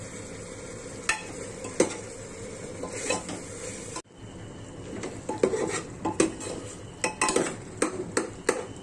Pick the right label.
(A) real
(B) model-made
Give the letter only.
A